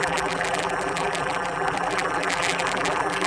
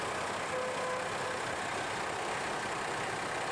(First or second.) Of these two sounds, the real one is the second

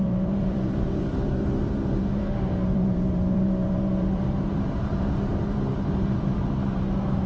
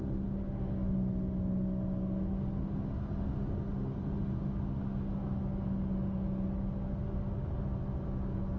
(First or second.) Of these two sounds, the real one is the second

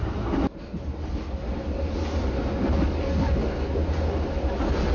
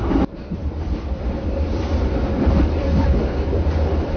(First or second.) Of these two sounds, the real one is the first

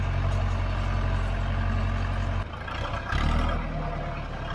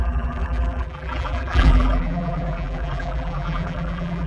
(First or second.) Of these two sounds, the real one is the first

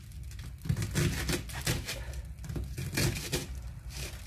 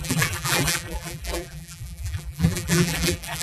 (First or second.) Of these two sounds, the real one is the first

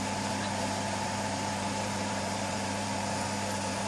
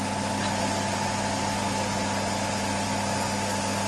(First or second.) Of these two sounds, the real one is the second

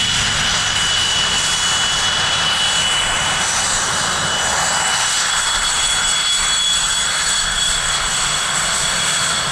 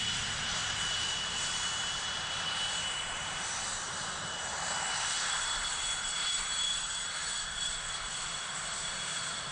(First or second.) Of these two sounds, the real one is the first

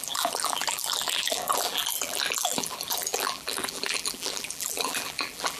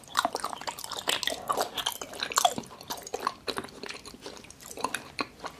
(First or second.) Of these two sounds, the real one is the second